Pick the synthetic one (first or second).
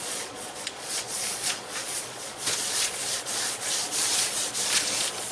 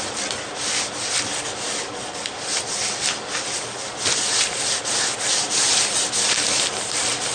first